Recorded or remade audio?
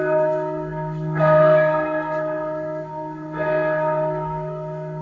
remade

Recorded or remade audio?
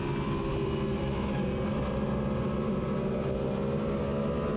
recorded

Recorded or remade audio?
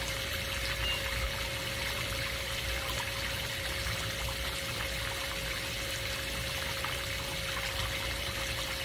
recorded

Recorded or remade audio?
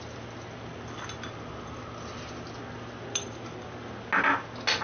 recorded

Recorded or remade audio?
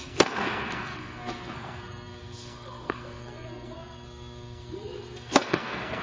remade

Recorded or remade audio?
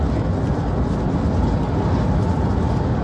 recorded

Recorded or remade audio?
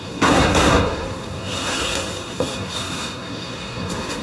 remade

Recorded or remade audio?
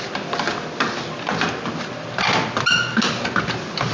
recorded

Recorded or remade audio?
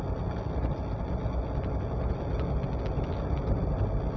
recorded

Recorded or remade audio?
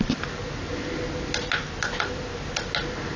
recorded